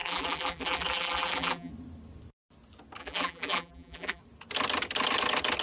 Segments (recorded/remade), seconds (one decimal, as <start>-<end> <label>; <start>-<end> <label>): 0.0-1.7 remade; 1.7-3.0 recorded; 3.0-4.2 remade; 4.2-5.6 recorded